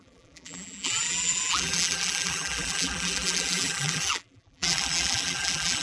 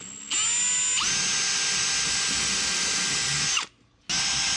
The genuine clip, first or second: second